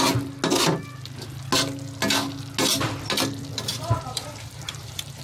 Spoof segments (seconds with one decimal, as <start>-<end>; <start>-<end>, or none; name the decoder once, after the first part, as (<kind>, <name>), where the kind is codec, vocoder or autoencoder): 3.7-5.2 (vocoder, BigVGAN v2)